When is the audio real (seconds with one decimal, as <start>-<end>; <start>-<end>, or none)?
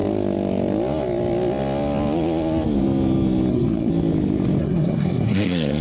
0.0-3.5; 3.9-4.6